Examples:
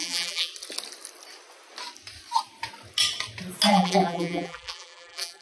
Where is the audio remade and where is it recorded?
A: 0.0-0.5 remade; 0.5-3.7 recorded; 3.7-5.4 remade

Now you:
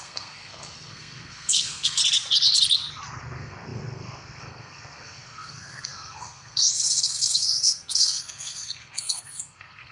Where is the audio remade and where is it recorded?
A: 0.0-2.0 remade; 2.0-3.2 recorded; 3.2-9.9 remade

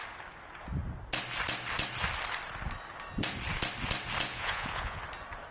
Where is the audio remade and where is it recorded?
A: 0.0-4.3 recorded; 4.3-5.0 remade; 5.0-5.5 recorded

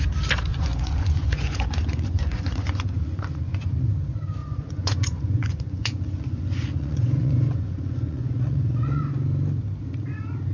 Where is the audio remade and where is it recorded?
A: 0.0-0.5 recorded; 0.5-3.9 remade; 3.9-4.4 recorded; 4.4-9.1 remade; 9.1-10.5 recorded

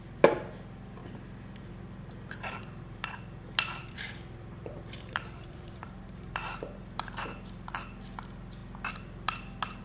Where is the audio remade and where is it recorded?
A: 0.0-3.8 recorded; 3.8-6.4 remade; 6.4-9.8 recorded

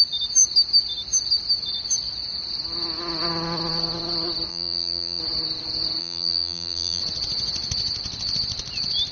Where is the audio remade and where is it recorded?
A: 0.0-4.5 recorded; 4.5-5.2 remade; 5.2-6.0 recorded; 6.0-7.0 remade; 7.0-9.1 recorded

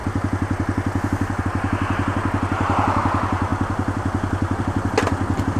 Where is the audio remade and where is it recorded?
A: 0.0-5.6 recorded

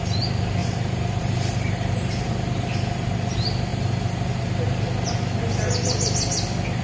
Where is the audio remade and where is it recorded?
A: 0.0-0.6 recorded; 0.6-2.3 remade; 2.3-3.7 recorded; 3.7-4.3 remade; 4.3-6.8 recorded